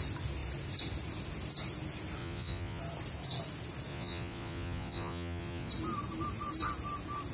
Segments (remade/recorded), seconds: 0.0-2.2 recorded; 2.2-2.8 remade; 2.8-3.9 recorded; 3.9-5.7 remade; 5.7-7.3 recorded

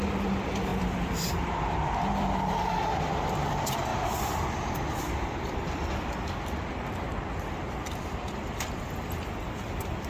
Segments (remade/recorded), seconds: 0.0-7.1 remade; 7.1-7.7 recorded; 7.7-10.1 remade

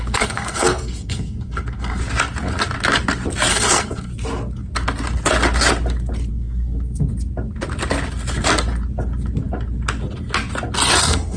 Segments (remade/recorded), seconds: 0.0-2.0 remade; 2.0-3.5 recorded; 3.5-4.1 remade; 4.1-6.3 recorded; 6.3-7.1 remade; 7.1-11.0 recorded; 11.0-11.4 remade

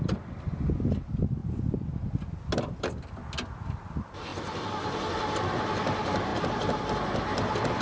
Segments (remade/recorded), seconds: 0.0-7.8 recorded

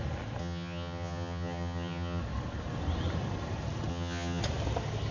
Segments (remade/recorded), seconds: 0.0-0.4 recorded; 0.4-2.2 remade; 2.2-3.9 recorded; 3.9-4.4 remade; 4.4-5.1 recorded

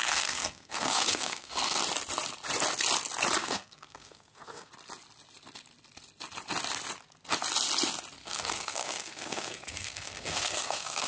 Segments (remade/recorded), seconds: 0.0-1.8 remade; 1.8-3.4 recorded; 3.4-4.7 remade; 4.7-8.2 recorded; 8.2-11.1 remade

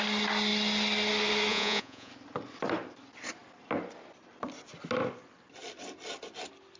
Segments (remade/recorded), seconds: 0.0-1.5 recorded; 1.5-2.1 remade; 2.1-6.8 recorded